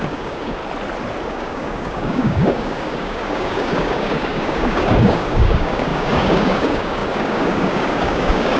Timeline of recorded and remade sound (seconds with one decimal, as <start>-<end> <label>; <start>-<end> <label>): 0.0-0.6 remade; 0.6-1.3 recorded; 1.3-8.6 remade